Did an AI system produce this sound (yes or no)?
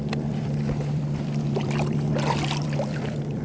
yes